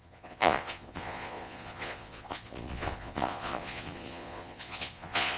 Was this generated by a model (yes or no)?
yes